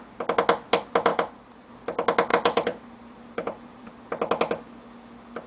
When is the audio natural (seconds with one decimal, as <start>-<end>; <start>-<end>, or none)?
0.0-1.1; 1.7-2.3; 4.0-5.5